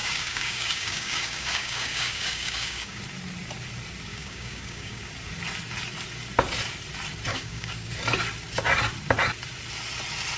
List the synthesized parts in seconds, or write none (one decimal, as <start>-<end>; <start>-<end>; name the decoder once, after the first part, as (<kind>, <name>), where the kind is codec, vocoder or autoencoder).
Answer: 0.0-3.0 (codec, DAC); 4.1-5.0; 7.3-7.9